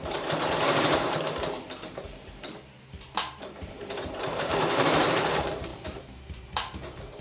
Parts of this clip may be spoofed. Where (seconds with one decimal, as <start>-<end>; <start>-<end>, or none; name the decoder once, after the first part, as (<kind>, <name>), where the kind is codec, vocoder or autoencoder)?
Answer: 0.0-7.2 (vocoder, BigVGAN v2)